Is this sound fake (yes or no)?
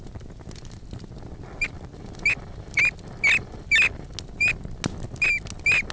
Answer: no